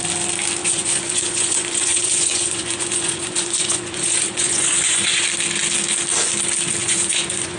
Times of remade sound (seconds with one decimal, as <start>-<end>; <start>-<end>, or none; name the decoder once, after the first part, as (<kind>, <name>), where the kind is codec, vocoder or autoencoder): 0.6-5.2 (vocoder, Vocos); 6.8-7.6